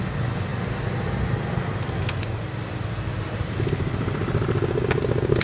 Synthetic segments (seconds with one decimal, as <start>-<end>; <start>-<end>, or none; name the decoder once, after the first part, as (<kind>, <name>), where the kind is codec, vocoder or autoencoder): none